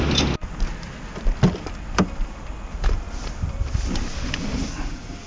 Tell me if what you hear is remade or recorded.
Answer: remade